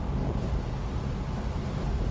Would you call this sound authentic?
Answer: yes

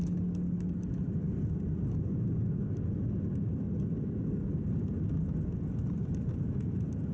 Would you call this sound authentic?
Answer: yes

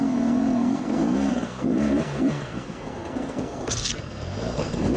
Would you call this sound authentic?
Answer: no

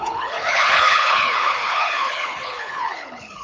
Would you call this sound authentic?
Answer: no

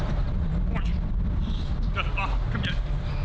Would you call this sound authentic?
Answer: yes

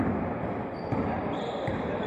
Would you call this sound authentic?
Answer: yes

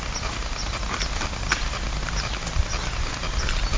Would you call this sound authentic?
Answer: no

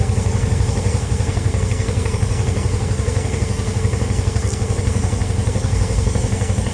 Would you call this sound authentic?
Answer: no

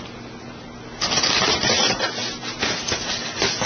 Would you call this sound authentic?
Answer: yes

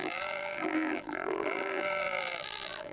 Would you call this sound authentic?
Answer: no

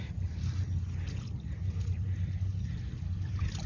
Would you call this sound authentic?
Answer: yes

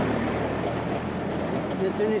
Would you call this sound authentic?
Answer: yes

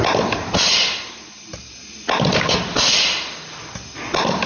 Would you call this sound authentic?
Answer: yes